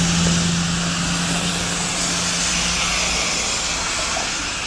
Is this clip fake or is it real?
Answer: real